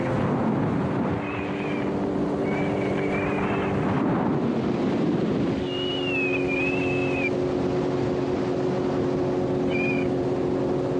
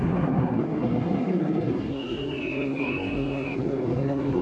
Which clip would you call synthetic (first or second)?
second